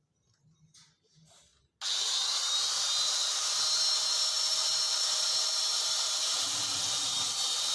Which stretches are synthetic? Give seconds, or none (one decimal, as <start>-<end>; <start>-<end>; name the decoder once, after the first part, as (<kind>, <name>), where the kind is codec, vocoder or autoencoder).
0.0-1.5 (vocoder, BigVGAN v2); 2.8-7.7